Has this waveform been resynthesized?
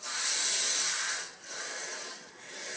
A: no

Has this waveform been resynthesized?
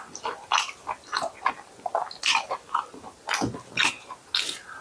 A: no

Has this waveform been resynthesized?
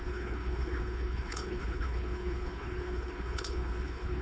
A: yes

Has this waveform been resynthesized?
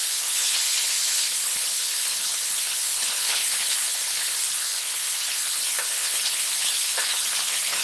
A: yes